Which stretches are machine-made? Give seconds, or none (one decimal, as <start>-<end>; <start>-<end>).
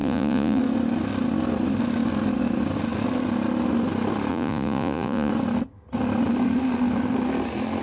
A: 0.0-0.6; 4.3-5.3